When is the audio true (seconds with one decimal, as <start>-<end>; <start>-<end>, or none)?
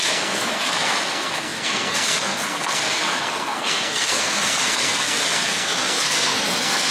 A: none